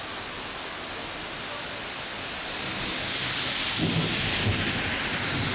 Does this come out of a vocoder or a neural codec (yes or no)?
no